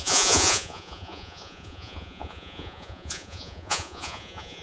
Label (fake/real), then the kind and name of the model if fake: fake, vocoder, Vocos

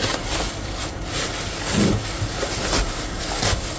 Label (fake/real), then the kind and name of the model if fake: real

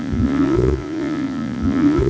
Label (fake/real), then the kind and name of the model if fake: fake, vocoder, Vocos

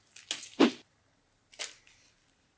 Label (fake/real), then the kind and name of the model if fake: real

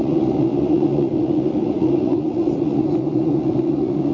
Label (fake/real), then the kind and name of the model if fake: fake, vocoder, Vocos